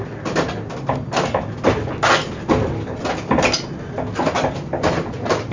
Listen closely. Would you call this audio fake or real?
real